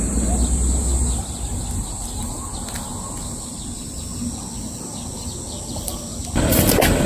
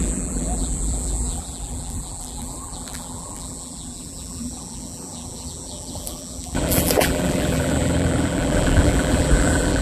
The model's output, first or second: second